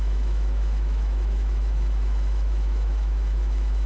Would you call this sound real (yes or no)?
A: no